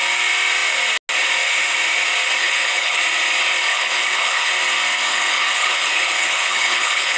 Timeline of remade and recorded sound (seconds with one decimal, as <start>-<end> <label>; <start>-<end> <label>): 0.0-2.4 recorded; 2.4-3.0 remade; 3.0-3.7 recorded; 3.7-4.5 remade; 4.5-5.1 recorded; 5.1-7.2 remade